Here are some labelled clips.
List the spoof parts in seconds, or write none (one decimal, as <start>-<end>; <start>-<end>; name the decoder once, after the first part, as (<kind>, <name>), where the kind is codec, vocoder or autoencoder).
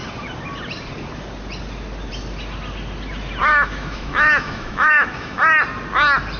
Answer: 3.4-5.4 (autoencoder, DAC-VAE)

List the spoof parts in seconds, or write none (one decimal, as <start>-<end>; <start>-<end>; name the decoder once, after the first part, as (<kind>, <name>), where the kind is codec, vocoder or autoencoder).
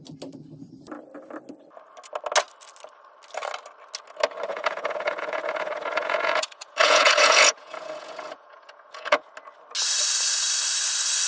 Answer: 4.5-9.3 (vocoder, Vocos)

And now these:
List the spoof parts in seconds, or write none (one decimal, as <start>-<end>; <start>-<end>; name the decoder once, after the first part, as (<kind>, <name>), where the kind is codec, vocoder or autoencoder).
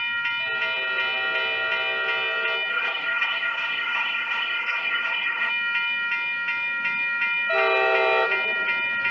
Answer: 2.7-5.5 (codec, SNAC)